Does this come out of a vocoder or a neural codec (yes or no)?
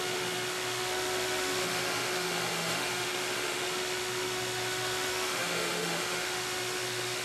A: yes